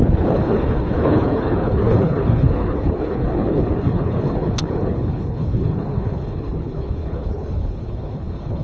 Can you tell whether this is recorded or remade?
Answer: remade